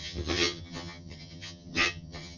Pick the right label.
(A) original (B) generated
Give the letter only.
B